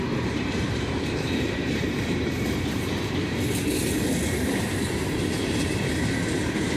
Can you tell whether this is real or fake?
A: fake